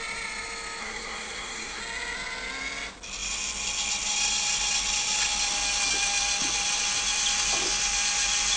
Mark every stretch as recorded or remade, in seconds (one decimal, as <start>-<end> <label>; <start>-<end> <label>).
0.0-0.8 recorded; 0.8-1.8 remade; 1.8-8.6 recorded